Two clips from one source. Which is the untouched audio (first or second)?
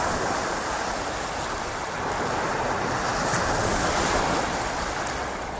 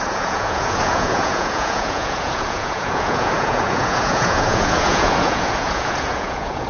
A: first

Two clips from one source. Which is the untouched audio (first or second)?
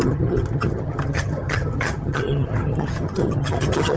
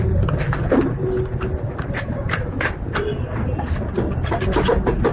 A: second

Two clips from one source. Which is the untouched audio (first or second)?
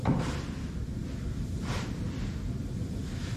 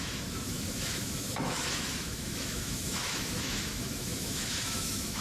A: first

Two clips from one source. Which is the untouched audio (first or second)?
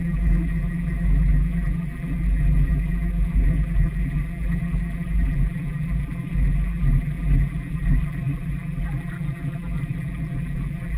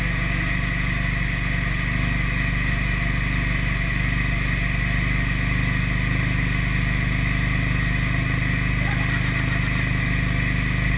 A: second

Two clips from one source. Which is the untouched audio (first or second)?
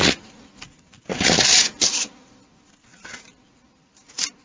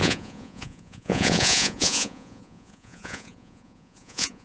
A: first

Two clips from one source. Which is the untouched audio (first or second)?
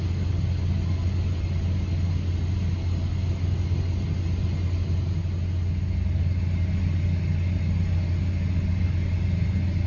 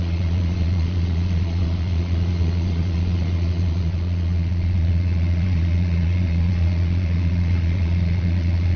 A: first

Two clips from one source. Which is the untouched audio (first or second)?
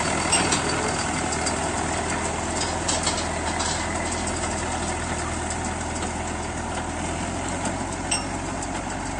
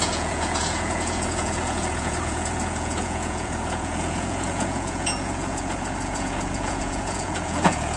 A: first